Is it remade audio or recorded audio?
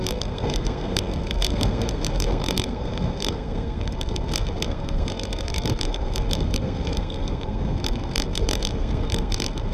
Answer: remade